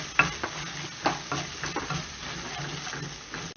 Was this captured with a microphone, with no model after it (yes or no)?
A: yes